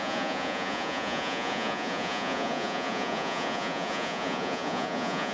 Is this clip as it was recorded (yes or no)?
no